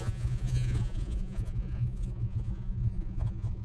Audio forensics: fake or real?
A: fake